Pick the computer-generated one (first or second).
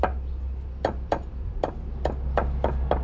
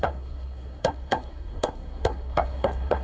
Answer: second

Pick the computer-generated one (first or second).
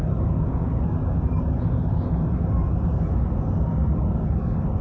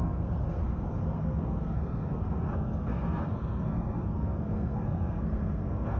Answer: second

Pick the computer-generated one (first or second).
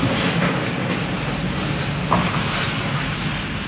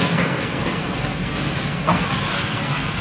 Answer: second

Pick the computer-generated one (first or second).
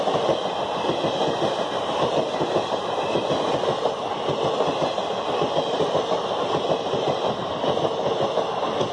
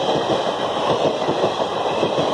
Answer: second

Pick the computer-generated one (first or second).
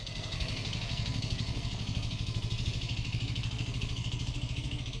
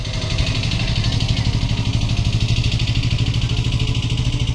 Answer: first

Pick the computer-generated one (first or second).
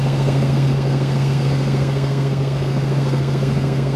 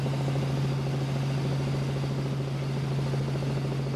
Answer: first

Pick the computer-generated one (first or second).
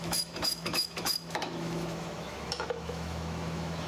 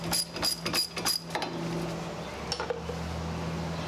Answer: first